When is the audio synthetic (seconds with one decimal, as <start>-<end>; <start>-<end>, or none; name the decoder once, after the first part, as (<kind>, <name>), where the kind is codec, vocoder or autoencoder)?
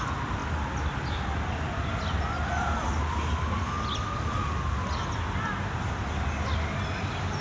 none